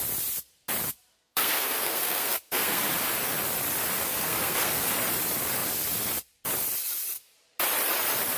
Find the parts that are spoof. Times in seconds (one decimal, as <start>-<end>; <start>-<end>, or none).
1.1-2.8; 4.0-4.9